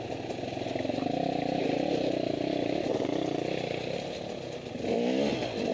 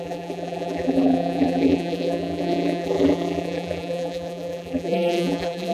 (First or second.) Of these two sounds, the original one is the first